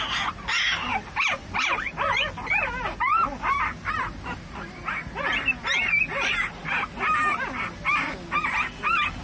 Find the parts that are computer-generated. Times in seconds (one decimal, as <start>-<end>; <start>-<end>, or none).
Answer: none